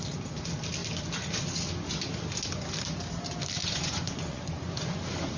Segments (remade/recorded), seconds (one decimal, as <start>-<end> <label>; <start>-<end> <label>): 0.0-3.6 recorded; 3.6-5.0 remade; 5.0-5.4 recorded